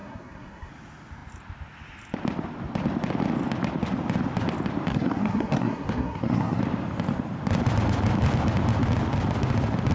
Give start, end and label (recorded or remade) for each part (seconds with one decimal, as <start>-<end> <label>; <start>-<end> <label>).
0.0-0.7 remade; 0.7-4.9 recorded; 4.9-6.6 remade; 6.6-9.9 recorded